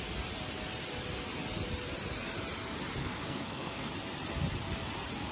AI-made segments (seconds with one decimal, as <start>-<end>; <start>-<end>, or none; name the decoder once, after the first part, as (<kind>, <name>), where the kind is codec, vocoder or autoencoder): 3.0-3.9 (codec, SNAC)